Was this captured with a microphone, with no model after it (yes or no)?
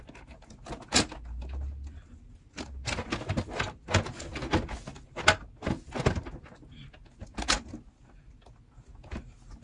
yes